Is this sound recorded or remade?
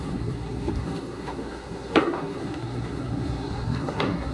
remade